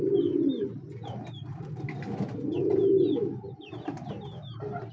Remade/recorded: recorded